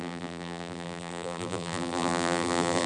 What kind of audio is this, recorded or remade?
remade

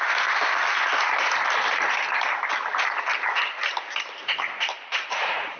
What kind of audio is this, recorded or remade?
recorded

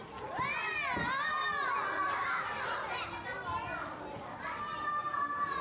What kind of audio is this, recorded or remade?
recorded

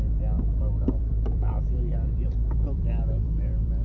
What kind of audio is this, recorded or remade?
remade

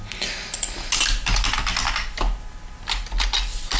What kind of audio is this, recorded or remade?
recorded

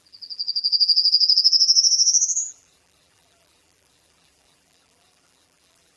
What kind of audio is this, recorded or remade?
remade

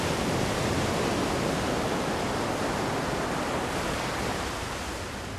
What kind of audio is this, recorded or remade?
recorded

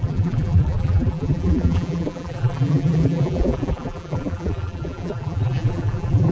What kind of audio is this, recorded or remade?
remade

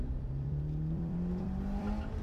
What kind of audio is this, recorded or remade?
remade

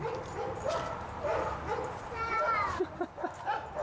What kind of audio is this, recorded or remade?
remade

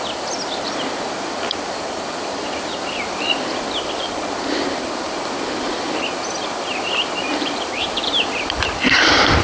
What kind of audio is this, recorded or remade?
remade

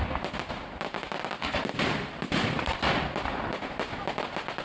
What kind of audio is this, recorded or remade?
remade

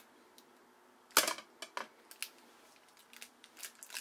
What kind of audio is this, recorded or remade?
recorded